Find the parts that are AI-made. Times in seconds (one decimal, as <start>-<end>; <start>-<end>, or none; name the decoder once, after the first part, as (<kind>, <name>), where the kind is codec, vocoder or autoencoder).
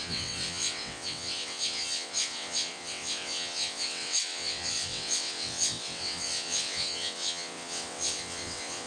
0.0-8.9 (vocoder, WaveNeXt)